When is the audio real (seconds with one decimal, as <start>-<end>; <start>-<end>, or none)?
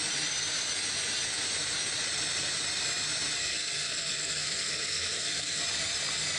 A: 0.0-3.4; 5.6-6.4